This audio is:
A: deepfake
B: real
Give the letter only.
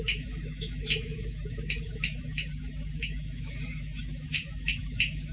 A